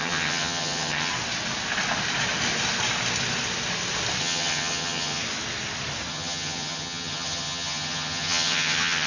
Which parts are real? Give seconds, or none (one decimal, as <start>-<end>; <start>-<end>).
1.1-4.2; 5.2-6.1